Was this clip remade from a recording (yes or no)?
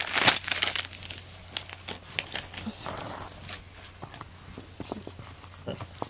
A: no